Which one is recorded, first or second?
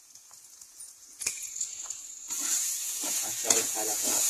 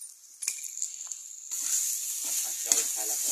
second